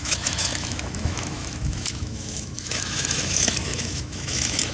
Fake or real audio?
fake